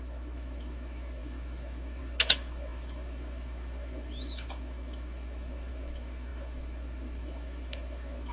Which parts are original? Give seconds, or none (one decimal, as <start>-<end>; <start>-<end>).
none